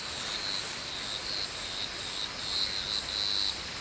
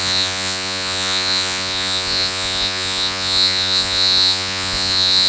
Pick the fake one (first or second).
second